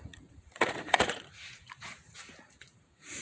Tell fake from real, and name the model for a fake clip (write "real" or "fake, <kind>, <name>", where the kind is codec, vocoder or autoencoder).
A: fake, vocoder, Vocos